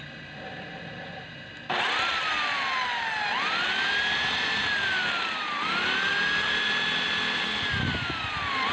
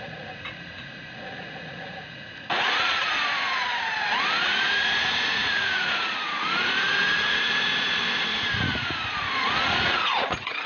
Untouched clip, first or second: first